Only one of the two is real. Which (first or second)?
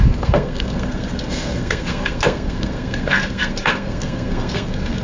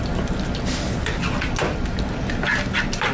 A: second